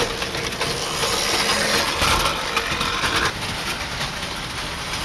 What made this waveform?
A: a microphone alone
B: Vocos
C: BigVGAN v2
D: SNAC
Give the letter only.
A